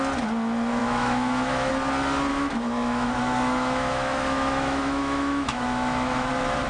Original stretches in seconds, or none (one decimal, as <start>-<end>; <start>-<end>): 0.0-0.8; 1.7-2.3; 6.3-6.7